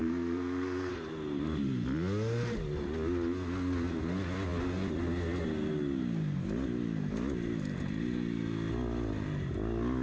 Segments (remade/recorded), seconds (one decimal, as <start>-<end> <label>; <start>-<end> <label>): 0.0-0.9 remade; 0.9-10.0 recorded